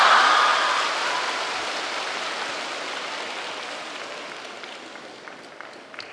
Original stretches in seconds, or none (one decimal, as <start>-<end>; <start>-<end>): 0.0-6.1